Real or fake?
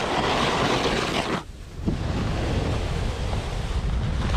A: real